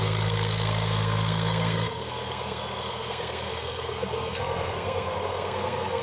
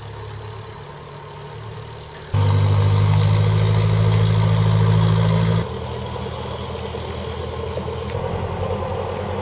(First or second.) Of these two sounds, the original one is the second